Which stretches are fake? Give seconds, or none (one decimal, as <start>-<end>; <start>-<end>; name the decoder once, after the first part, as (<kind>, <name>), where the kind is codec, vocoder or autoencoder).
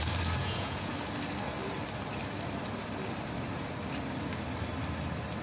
0.4-0.9 (vocoder, Vocos)